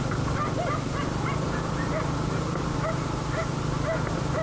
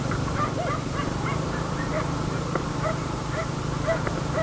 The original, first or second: first